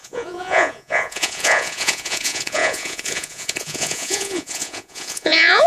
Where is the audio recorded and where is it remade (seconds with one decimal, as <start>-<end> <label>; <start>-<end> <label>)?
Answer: 0.0-5.7 remade